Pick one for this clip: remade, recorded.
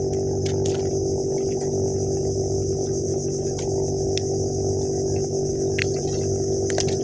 recorded